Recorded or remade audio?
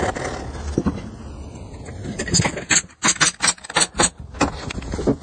recorded